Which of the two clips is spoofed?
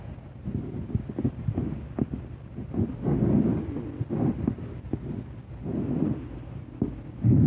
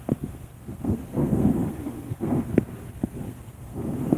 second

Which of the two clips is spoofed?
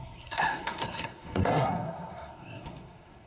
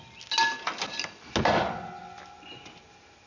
first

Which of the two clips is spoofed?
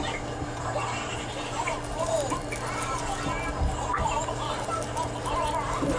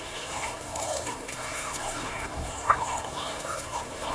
second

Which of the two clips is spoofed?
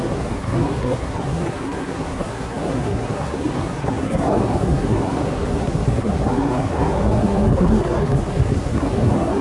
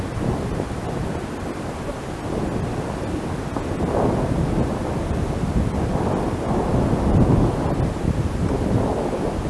first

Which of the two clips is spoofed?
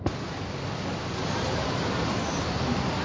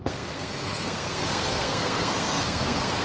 second